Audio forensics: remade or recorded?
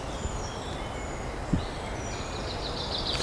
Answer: recorded